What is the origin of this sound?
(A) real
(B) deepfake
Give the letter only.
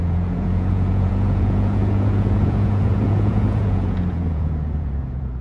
B